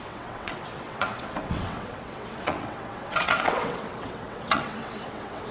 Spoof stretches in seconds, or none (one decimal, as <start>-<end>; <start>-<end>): 0.0-5.5